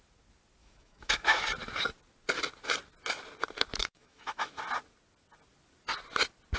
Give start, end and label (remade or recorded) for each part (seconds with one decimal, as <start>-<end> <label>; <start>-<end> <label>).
0.0-0.6 recorded; 0.6-1.4 remade; 1.4-3.8 recorded; 3.8-4.6 remade; 4.6-6.6 recorded